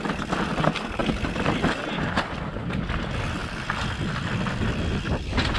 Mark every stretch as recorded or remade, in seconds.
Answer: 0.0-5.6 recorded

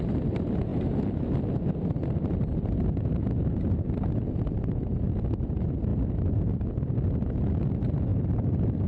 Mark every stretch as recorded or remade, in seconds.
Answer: 0.0-8.9 recorded

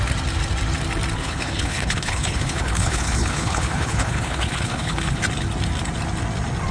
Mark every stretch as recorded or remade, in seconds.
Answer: 0.0-1.2 recorded; 1.2-5.2 remade; 5.2-6.7 recorded

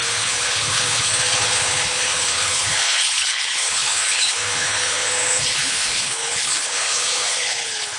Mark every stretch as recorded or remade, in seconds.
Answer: 0.0-8.0 remade

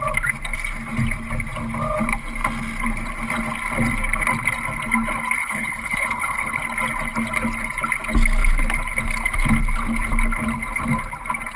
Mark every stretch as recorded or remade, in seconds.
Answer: 0.0-5.4 recorded; 5.4-6.6 remade; 6.6-11.6 recorded